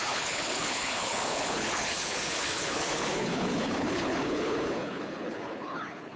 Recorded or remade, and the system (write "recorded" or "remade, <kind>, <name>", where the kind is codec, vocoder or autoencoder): remade, codec, HILCodec